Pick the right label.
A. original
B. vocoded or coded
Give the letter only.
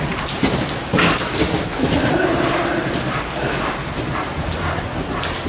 A